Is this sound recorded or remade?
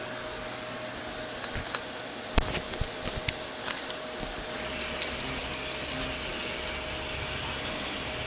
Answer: recorded